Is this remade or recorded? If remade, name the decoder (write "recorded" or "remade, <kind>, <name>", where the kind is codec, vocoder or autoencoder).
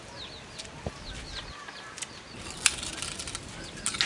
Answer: recorded